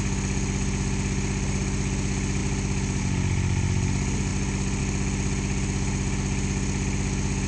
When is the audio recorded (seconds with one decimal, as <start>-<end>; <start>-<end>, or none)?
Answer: 0.0-7.5